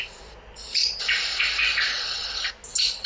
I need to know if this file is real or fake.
real